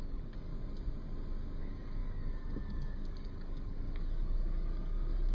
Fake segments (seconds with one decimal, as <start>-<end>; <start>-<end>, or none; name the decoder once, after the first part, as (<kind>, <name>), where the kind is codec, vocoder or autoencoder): 0.0-0.5 (codec, DAC); 1.6-5.3